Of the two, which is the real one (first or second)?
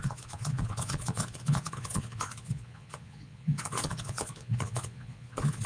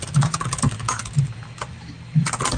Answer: second